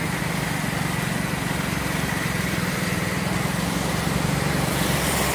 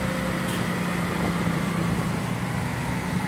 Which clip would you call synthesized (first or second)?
first